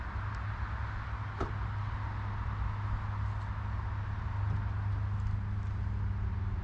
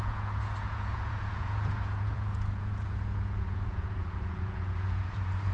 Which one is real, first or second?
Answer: first